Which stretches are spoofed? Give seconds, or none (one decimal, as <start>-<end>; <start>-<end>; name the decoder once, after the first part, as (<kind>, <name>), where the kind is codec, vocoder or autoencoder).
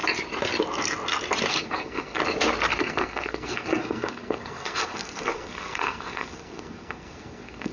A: 1.5-2.2 (codec, SNAC); 2.8-7.7